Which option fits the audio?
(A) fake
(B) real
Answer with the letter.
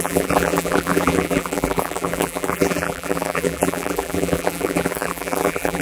A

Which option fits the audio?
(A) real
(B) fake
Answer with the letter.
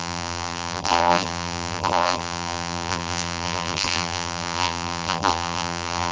B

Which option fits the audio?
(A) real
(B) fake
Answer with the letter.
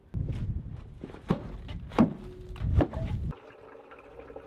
A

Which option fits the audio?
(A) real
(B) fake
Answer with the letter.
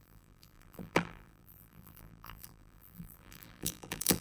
B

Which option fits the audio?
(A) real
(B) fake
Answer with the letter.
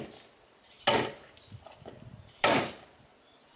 A